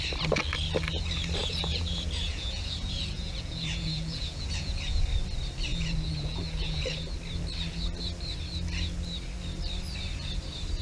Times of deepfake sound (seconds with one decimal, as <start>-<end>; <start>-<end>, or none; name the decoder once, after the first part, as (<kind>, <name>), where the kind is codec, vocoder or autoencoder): 1.4-5.0 (vocoder, Vocos); 5.7-6.8